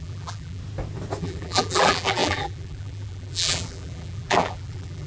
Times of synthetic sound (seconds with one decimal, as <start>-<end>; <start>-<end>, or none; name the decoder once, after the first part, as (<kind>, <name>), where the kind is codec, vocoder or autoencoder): 0.0-0.6 (vocoder, BigVGAN v2); 1.2-5.1